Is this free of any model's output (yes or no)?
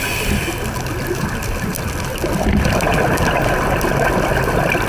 yes